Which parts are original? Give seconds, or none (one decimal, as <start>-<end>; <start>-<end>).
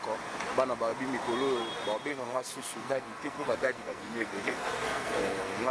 0.0-2.1